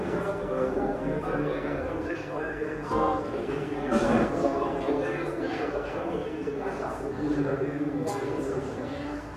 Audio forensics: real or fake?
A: fake